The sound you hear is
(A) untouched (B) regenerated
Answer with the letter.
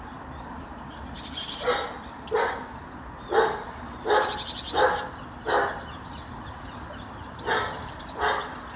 A